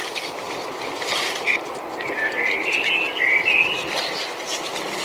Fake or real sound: real